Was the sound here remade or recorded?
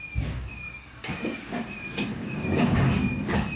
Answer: remade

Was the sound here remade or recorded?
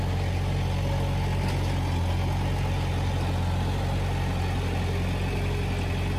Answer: recorded